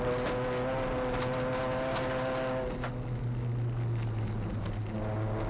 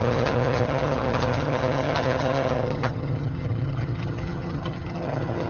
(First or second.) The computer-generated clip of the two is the second